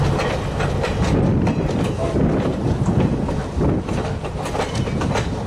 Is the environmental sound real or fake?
real